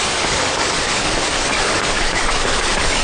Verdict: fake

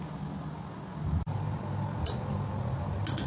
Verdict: real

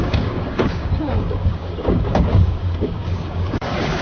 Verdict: fake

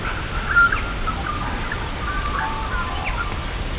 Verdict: real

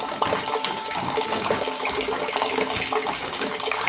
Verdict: fake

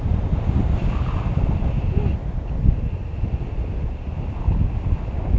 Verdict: real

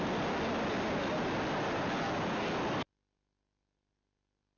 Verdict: real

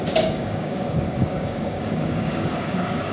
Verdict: fake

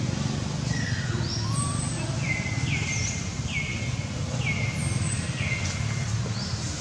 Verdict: real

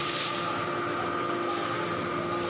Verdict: real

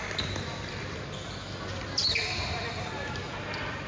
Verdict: real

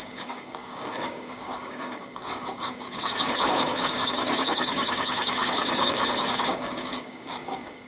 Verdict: fake